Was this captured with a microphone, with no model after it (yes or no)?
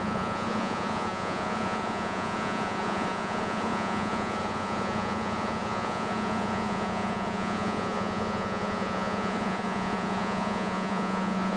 no